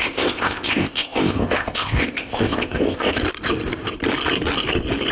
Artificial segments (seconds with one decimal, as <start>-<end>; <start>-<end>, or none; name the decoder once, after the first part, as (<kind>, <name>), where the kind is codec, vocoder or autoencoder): 0.0-3.2 (codec, ZipCodec)